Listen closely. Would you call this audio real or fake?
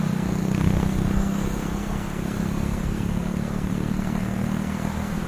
fake